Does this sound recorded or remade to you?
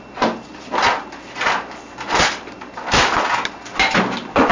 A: recorded